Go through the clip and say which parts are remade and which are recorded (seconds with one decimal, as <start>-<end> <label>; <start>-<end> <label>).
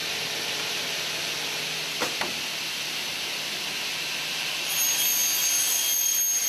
0.0-6.5 recorded